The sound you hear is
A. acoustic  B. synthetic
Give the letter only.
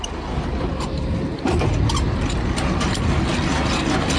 A